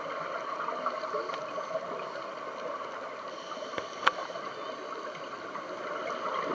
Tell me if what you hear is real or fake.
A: real